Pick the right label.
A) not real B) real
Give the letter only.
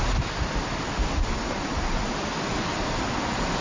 B